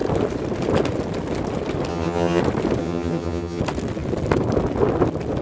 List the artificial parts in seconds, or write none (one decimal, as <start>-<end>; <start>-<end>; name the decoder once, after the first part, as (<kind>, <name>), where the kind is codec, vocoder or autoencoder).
1.9-2.4 (vocoder, HiFi-GAN); 2.8-3.6